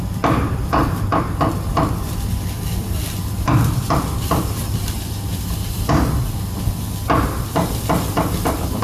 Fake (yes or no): yes